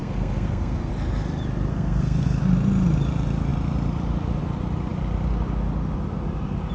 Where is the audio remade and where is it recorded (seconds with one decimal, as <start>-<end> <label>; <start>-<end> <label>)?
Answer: 0.0-0.9 remade; 0.9-1.7 recorded; 1.7-2.4 remade; 2.4-6.7 recorded